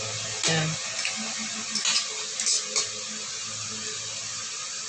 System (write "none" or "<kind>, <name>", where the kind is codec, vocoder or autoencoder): none